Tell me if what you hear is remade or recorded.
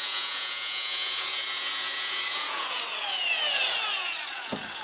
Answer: remade